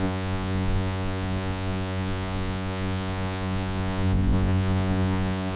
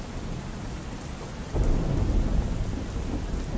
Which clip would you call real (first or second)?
second